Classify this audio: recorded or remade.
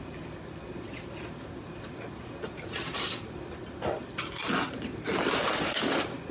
recorded